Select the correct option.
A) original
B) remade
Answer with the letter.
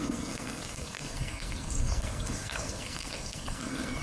B